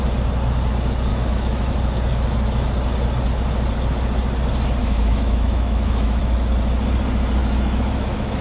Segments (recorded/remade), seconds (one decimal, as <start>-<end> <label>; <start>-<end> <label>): 0.0-1.1 recorded; 1.1-1.7 remade; 1.7-4.8 recorded; 4.8-6.2 remade; 6.2-7.4 recorded; 7.4-8.4 remade